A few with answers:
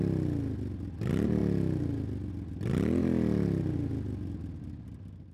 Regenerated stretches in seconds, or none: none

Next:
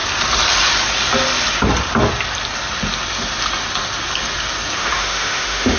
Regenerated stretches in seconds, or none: 4.8-5.8 (autoencoder, DAC-VAE)

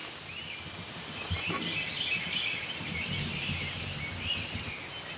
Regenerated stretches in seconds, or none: none

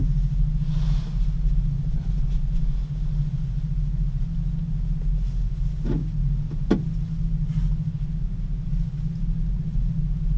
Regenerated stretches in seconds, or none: none

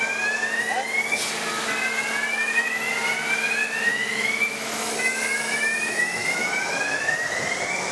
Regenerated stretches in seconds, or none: 2.3-2.9 (autoencoder, DAC-VAE); 3.9-7.4

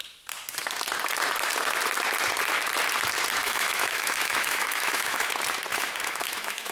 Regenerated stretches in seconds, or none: 3.4-5.3 (autoencoder, DAC-VAE); 5.7-6.7